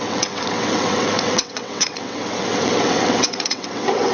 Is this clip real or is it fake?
fake